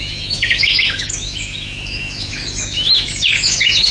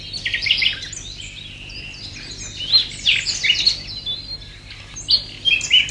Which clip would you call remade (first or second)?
first